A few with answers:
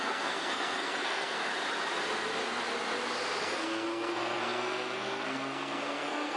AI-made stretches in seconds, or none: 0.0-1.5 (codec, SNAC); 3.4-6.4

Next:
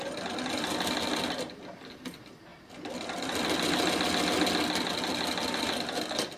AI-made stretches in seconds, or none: none

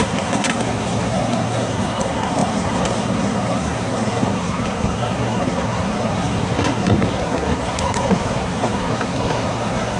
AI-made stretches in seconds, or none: 0.0-10.0 (codec, SNAC)

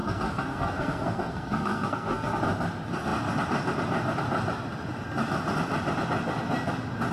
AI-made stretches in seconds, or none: 0.0-2.4 (codec, SNAC)

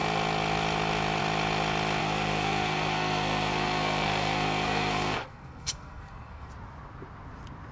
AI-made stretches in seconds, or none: 2.0-6.5 (codec, SNAC)

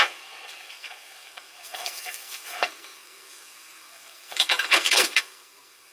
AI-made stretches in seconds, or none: 0.0-5.9 (codec, SNAC)

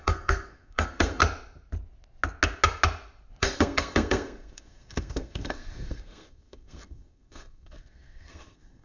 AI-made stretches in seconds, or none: 0.0-1.2 (codec, SNAC); 3.4-8.8

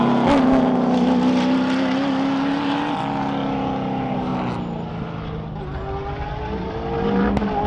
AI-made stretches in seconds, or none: none